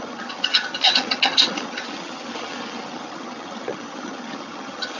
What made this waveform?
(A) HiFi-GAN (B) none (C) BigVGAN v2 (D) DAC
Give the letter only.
A